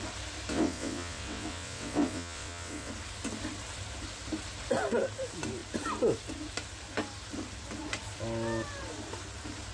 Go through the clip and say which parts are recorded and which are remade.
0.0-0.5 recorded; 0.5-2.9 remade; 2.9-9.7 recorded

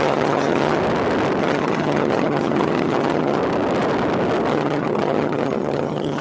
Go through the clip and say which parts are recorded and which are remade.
0.0-0.8 remade; 0.8-1.4 recorded; 1.4-3.4 remade; 3.4-4.5 recorded; 4.5-6.2 remade

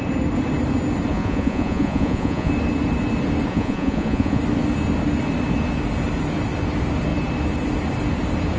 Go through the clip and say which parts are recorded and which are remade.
0.0-1.1 recorded; 1.1-2.5 remade; 2.5-3.5 recorded; 3.5-4.4 remade; 4.4-8.6 recorded

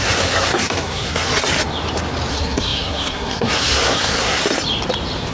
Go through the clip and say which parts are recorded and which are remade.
0.0-1.3 remade; 1.3-2.3 recorded; 2.3-4.4 remade; 4.4-5.3 recorded

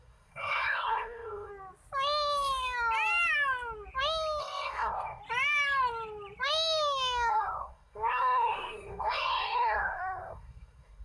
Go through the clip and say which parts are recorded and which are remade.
0.0-1.5 remade; 1.5-4.4 recorded; 4.4-5.2 remade; 5.2-7.3 recorded; 7.3-11.0 remade

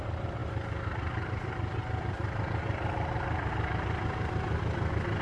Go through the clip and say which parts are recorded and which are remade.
0.0-0.4 recorded; 0.4-3.5 remade; 3.5-5.2 recorded